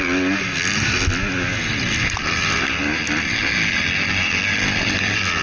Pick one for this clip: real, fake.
real